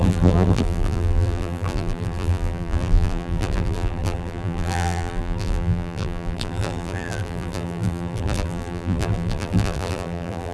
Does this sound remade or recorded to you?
remade